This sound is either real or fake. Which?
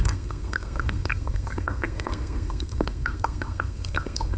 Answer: fake